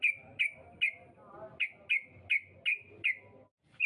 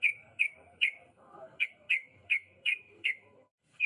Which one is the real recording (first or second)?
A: first